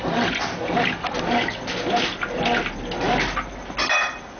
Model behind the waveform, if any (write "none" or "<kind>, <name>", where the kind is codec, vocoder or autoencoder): none